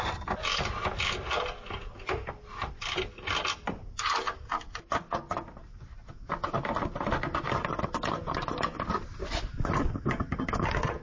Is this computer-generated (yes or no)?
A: no